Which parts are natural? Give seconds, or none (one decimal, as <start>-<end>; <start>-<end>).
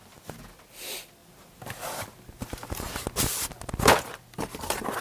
1.2-3.9